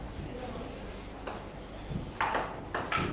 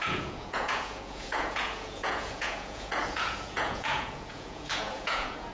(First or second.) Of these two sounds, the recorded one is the first